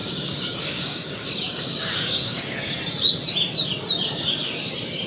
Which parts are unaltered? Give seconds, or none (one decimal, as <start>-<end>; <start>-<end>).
2.7-5.1